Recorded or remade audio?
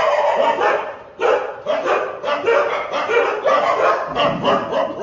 recorded